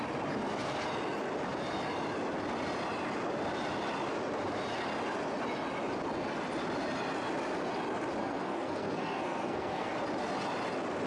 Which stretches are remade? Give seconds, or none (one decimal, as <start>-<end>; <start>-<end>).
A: 8.2-9.9